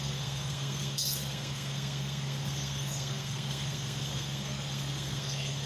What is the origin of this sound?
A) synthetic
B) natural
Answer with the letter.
A